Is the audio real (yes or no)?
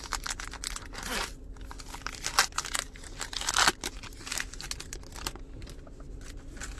yes